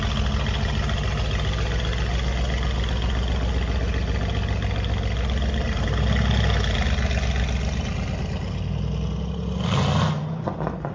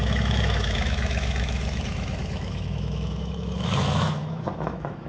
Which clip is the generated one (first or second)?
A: second